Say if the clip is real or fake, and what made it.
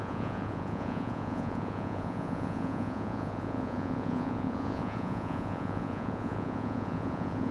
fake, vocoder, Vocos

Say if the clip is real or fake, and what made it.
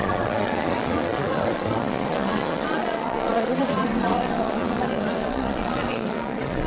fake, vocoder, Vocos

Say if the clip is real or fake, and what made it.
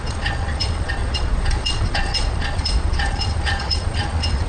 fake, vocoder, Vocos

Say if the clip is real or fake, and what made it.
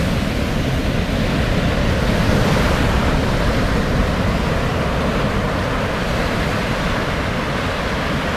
real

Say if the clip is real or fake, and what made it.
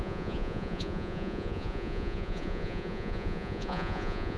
fake, vocoder, Vocos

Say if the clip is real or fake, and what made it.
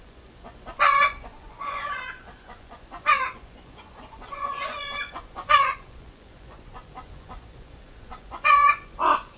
fake, vocoder, Vocos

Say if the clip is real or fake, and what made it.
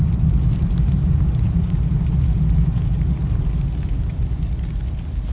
real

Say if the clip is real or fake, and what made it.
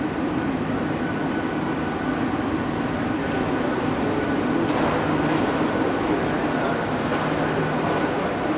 real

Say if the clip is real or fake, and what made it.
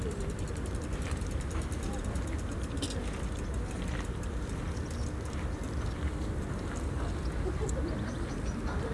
real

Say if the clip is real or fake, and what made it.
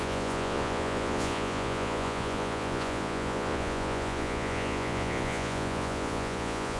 fake, vocoder, Vocos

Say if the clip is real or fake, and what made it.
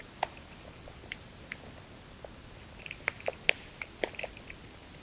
real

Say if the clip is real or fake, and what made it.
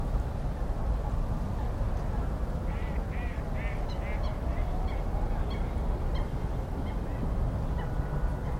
real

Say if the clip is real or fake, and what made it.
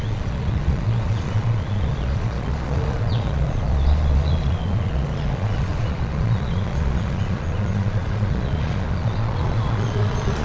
fake, vocoder, Vocos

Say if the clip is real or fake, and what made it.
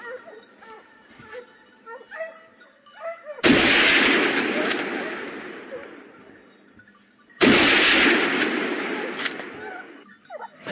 real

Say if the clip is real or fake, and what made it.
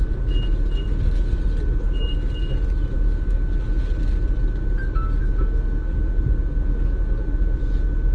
real